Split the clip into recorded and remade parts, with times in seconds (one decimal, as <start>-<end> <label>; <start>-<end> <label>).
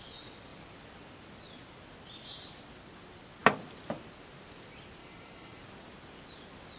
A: 0.0-5.0 recorded; 5.0-5.6 remade; 5.6-6.8 recorded